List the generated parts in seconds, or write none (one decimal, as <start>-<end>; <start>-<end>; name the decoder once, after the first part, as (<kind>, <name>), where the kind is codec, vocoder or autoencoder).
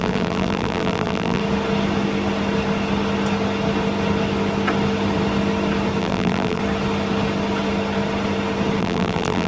0.0-1.4 (vocoder, BigVGAN v2); 6.0-6.6; 8.8-9.5